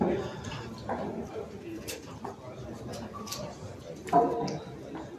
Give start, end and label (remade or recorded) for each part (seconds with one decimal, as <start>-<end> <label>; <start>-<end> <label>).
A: 0.0-5.2 recorded